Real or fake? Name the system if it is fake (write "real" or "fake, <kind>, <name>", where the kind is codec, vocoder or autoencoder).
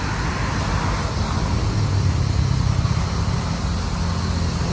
real